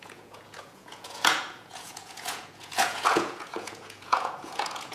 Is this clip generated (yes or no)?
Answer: yes